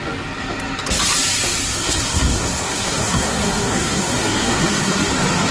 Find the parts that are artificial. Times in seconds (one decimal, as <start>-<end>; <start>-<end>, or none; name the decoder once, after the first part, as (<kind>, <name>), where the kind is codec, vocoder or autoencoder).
1.8-5.1 (codec, SNAC)